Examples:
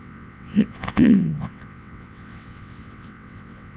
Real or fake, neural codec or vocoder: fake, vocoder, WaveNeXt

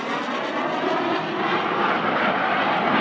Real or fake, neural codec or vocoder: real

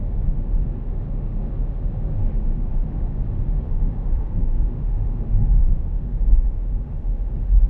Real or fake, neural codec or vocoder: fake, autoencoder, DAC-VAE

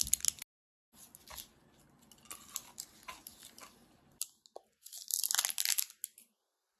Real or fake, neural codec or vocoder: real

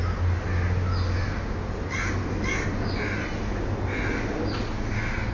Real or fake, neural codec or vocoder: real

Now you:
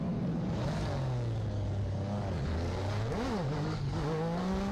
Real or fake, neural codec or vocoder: fake, codec, DAC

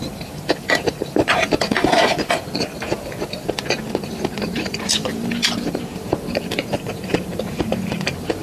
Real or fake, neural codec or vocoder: fake, vocoder, BigVGAN v2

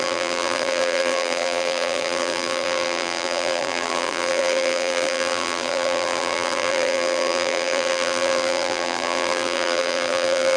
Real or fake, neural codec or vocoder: fake, vocoder, BigVGAN v2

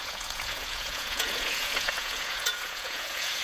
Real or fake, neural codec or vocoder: fake, vocoder, Vocos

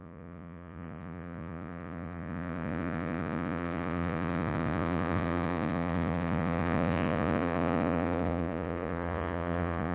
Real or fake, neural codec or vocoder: fake, vocoder, Vocos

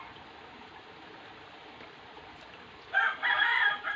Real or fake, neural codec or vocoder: fake, vocoder, BigVGAN v2